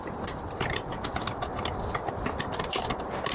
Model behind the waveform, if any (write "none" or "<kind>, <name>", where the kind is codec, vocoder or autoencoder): none